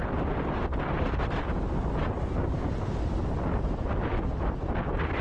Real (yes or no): yes